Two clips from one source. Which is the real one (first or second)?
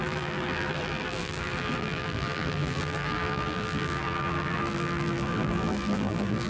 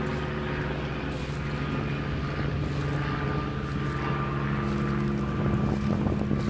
second